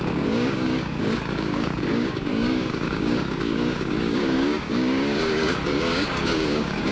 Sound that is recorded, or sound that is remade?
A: remade